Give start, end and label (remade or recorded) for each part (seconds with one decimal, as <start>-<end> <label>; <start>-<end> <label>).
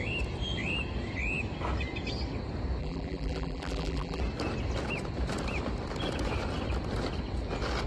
0.0-2.8 recorded; 2.8-4.2 remade; 4.2-7.9 recorded